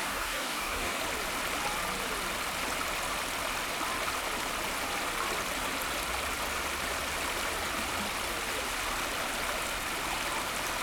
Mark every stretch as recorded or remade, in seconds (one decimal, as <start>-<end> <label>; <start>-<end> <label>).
0.0-1.0 remade; 1.0-10.8 recorded